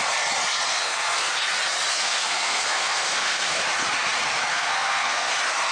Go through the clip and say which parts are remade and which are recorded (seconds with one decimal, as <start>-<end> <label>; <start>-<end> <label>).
0.0-0.7 recorded; 0.7-1.3 remade; 1.3-1.9 recorded; 1.9-3.6 remade; 3.6-4.5 recorded; 4.5-5.3 remade; 5.3-5.7 recorded